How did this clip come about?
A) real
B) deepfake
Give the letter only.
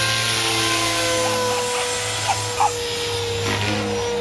A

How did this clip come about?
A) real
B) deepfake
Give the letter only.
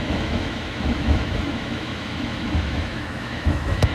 B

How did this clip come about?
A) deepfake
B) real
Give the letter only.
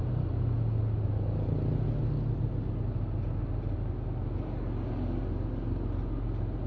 B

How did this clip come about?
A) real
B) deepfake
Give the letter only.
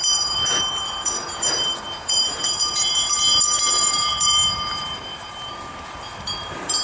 B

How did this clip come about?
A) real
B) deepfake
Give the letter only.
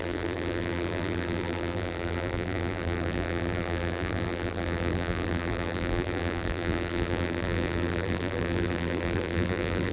B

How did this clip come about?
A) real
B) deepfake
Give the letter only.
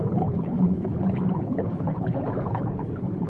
B